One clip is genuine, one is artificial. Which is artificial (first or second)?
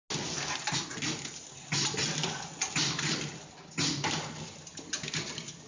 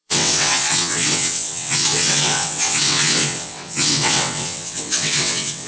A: second